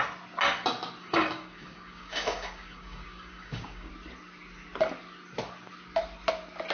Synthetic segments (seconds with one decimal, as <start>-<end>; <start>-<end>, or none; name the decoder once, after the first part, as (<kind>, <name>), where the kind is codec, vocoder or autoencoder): 1.0-3.9 (codec, DAC)

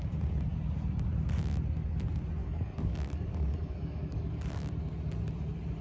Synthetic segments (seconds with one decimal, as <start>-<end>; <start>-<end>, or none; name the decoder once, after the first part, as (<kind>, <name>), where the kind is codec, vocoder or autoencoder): 2.4-4.5 (codec, DAC)

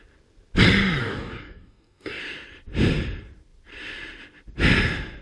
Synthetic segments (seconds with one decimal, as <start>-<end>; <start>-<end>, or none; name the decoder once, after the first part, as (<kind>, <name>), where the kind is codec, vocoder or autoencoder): 1.0-2.2 (codec, DAC)

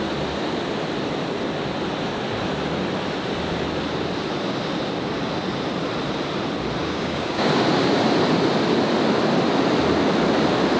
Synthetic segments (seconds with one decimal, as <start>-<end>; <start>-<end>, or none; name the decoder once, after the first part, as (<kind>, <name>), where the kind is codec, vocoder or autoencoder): 6.8-7.5 (codec, DAC)

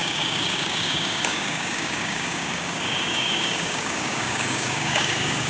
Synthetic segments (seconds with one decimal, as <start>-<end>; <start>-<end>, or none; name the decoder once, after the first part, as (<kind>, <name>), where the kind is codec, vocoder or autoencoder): 0.0-5.5 (codec, DAC)